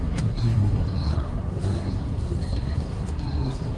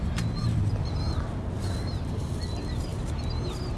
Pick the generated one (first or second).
first